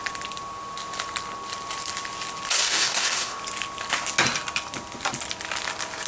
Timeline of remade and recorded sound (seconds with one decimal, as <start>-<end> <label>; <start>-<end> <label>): 0.0-2.6 recorded; 2.6-3.4 remade; 3.4-6.1 recorded